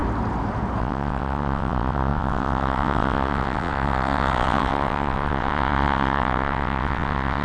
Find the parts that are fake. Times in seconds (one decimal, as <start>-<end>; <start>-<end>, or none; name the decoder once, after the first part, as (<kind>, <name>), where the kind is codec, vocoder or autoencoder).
0.8-7.4 (vocoder, WaveNeXt)